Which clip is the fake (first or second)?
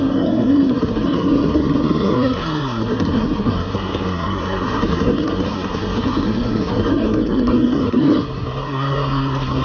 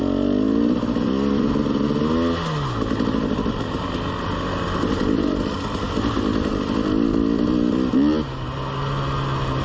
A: first